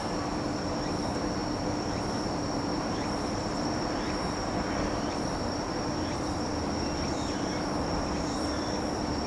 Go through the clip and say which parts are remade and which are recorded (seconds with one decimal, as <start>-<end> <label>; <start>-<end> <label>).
0.0-1.4 remade; 1.4-2.3 recorded; 2.3-9.3 remade